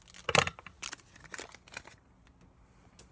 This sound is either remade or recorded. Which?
recorded